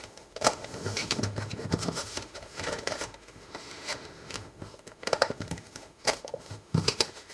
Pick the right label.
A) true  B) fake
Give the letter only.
B